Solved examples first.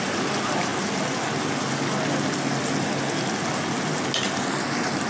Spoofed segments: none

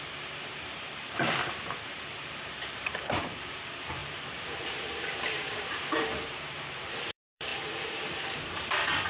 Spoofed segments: 0.0-9.1 (vocoder, BigVGAN v2)

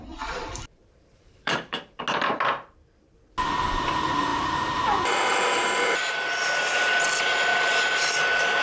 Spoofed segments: 0.8-2.0 (vocoder, BigVGAN v2); 4.3-6.1; 7.5-8.1

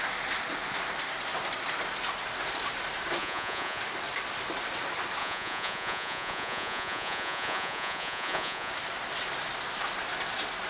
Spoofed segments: 3.2-3.8 (vocoder, Vocos); 5.2-8.7

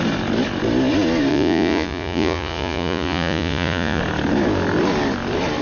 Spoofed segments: 1.3-4.0 (vocoder, Vocos)

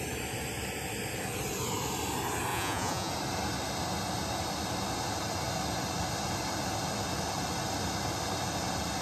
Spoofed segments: 2.5-3.1 (vocoder, Vocos)